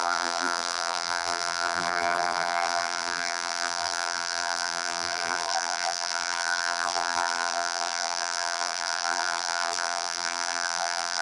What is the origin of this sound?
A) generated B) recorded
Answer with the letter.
A